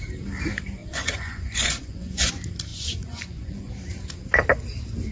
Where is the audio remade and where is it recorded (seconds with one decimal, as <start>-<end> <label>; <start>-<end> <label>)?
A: 0.0-0.8 recorded; 0.8-2.3 remade; 2.3-2.7 recorded; 2.7-3.7 remade; 3.7-5.1 recorded